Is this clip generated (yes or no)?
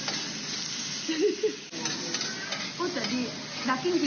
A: no